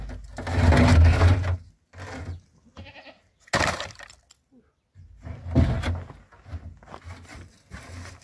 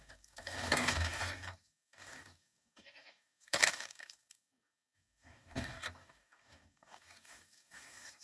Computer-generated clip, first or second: second